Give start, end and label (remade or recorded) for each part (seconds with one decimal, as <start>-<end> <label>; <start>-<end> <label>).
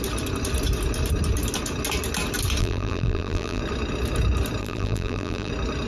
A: 0.0-2.6 recorded; 2.6-3.6 remade; 3.6-4.6 recorded; 4.6-5.5 remade; 5.5-5.9 recorded